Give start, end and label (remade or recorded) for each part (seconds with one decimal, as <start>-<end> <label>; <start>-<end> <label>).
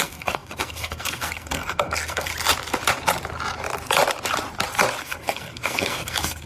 0.0-2.3 remade; 2.3-5.0 recorded; 5.0-6.5 remade